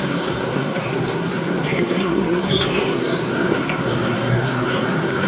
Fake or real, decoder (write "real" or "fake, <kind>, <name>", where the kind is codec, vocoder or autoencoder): fake, codec, SNAC